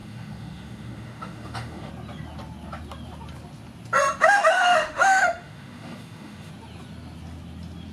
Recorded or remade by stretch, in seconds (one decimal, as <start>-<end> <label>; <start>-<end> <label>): 0.0-1.9 remade; 1.9-4.2 recorded; 4.2-6.5 remade; 6.5-7.9 recorded